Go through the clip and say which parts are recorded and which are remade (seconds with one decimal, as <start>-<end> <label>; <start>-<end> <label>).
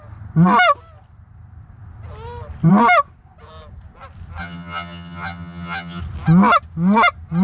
0.0-4.4 recorded; 4.4-6.0 remade; 6.0-7.4 recorded